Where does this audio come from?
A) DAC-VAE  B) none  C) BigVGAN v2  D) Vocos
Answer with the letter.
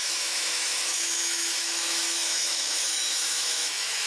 A